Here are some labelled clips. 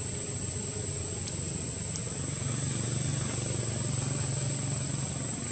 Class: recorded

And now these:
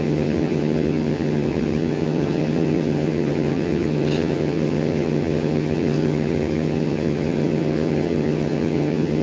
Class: remade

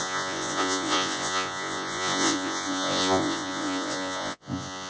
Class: remade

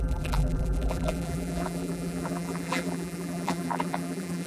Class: remade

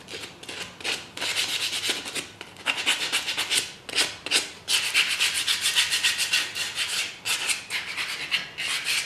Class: recorded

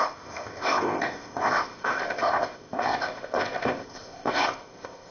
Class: remade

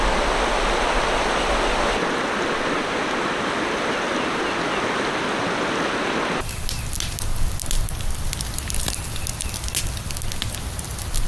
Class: recorded